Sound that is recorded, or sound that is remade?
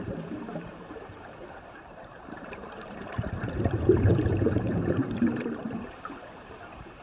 remade